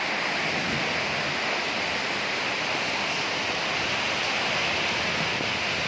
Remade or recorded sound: recorded